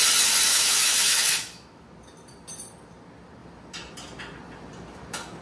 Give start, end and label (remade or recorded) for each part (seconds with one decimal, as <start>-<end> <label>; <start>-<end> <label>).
0.0-0.5 recorded; 0.5-1.9 remade; 1.9-5.4 recorded